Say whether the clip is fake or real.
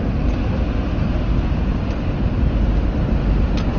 real